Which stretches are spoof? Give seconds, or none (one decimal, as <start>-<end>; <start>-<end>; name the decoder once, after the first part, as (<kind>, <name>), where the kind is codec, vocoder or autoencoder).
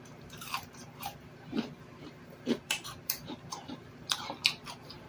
0.0-5.1 (vocoder, BigVGAN v2)